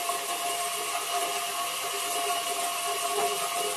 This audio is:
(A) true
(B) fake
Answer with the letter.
A